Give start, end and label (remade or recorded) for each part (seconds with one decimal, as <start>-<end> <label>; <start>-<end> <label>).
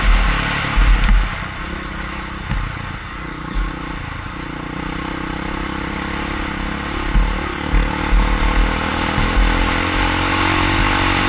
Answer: 0.0-3.0 recorded; 3.0-3.7 remade; 3.7-7.5 recorded; 7.5-8.0 remade; 8.0-11.3 recorded